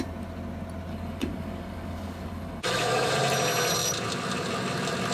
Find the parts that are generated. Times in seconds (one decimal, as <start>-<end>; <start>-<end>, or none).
0.9-3.1